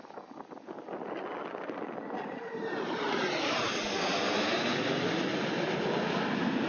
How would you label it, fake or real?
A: real